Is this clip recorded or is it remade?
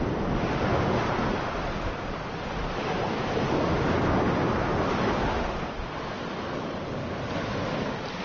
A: recorded